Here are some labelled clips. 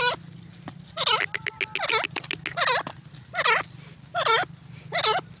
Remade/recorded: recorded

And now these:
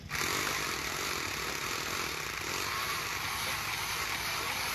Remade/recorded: recorded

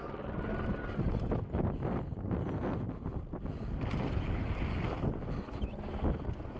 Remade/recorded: recorded